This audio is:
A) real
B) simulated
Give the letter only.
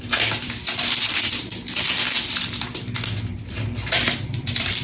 B